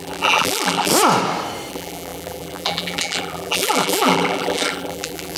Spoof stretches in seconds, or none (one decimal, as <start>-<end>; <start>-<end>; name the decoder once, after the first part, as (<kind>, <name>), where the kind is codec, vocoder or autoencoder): 0.0-0.9 (vocoder, BigVGAN v2); 1.7-5.4